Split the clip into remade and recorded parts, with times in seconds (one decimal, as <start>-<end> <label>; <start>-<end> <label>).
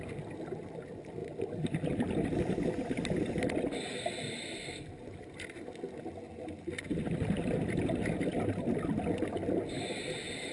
0.0-10.5 recorded